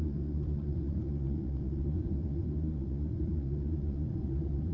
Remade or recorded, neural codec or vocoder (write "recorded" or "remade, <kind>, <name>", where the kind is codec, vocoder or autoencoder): remade, vocoder, Vocos